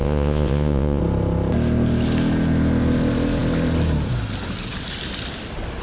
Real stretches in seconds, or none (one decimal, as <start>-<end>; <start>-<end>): 1.0-5.8